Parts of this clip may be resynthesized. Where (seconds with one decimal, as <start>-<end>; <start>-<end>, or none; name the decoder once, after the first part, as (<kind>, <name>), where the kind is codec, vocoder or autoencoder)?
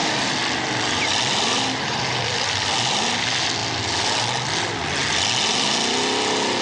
0.0-3.0 (vocoder, BigVGAN v2)